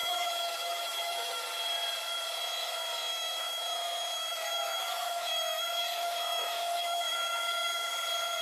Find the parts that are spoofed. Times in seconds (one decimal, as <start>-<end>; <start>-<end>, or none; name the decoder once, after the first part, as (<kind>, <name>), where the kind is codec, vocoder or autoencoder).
0.0-1.4 (autoencoder, DAC-VAE); 3.1-7.9